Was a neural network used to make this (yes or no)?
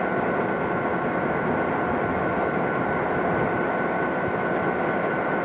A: no